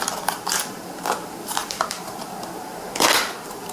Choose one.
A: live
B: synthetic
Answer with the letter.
B